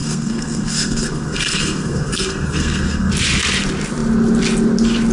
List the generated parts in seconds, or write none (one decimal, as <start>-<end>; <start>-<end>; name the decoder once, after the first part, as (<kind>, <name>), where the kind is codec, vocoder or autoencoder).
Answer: 0.0-3.1 (codec, SNAC)